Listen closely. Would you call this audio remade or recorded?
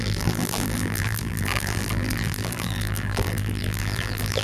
remade